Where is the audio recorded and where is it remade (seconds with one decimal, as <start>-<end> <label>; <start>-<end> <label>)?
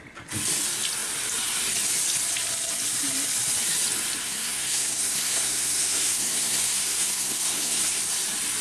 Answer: 0.0-4.2 recorded; 4.2-8.0 remade; 8.0-8.6 recorded